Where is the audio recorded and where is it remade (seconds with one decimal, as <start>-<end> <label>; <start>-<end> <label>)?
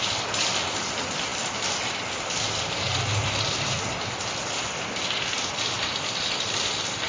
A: 0.0-7.1 recorded